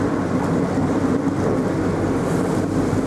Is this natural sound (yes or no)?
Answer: yes